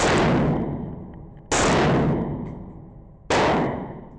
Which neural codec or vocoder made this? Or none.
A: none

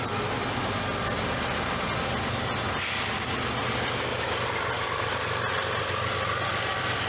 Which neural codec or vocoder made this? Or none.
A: none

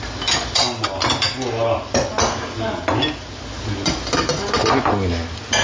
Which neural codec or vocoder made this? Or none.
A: none